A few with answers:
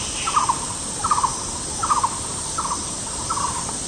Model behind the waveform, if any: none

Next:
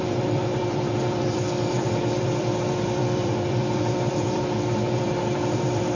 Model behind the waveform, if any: vocoder, BigVGAN v2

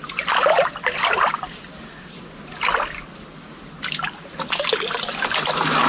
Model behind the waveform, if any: vocoder, BigVGAN v2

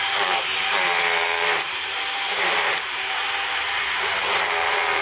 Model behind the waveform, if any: vocoder, BigVGAN v2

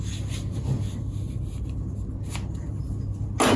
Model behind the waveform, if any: none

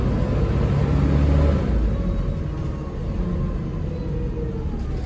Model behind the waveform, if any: none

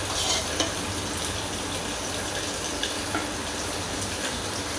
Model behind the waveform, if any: none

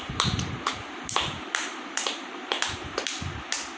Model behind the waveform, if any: vocoder, BigVGAN v2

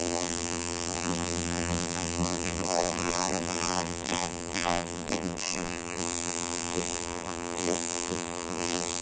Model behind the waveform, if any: vocoder, BigVGAN v2